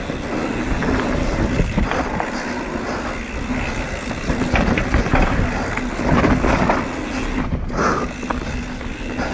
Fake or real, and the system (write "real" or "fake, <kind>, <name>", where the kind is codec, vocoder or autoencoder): real